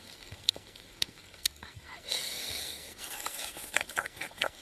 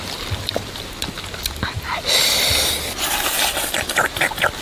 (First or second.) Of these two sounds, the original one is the second